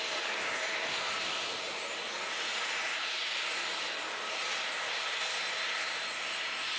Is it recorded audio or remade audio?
recorded